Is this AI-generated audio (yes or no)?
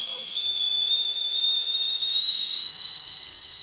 yes